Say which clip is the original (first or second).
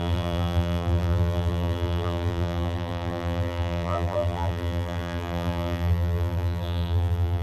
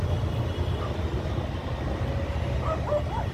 second